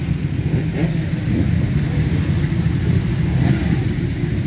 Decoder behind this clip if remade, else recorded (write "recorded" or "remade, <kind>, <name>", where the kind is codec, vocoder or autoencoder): recorded